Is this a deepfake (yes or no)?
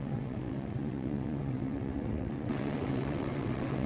yes